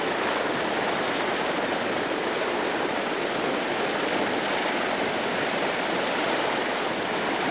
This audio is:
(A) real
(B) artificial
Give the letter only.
A